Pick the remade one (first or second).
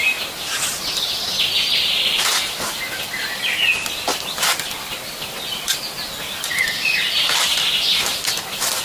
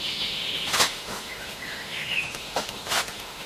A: second